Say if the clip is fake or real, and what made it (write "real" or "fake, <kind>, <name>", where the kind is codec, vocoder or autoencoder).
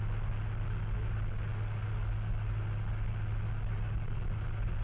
real